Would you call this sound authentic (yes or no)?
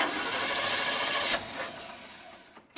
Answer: yes